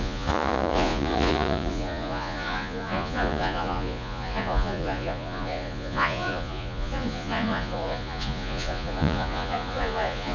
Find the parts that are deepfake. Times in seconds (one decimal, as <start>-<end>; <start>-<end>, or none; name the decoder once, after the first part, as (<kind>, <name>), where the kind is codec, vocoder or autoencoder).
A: 0.0-10.3 (vocoder, Vocos)